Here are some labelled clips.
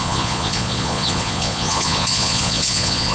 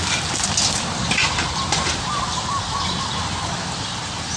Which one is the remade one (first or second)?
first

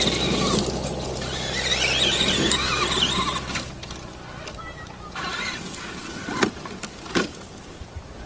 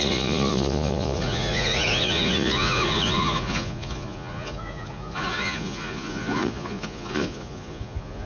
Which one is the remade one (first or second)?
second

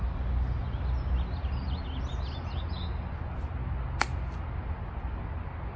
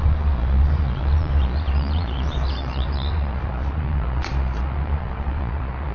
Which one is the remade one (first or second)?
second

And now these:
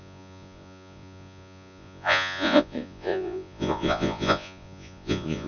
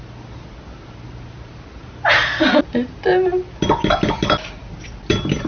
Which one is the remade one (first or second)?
first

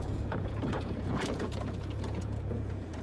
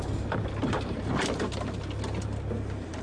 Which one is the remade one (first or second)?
first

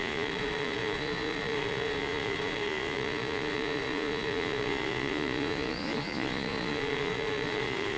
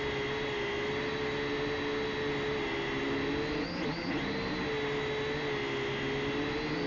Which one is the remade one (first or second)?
first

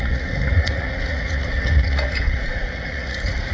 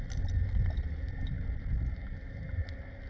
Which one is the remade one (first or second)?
first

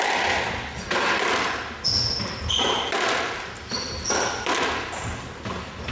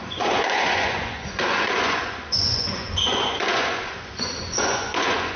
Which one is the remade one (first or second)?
second